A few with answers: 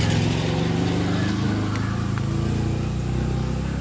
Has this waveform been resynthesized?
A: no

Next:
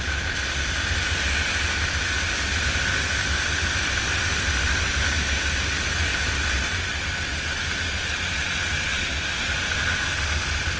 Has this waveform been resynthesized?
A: no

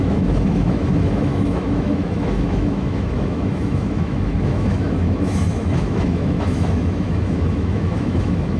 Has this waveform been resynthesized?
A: yes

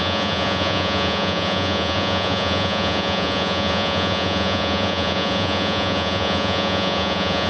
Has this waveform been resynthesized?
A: yes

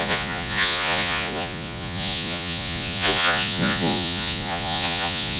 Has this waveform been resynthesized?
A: yes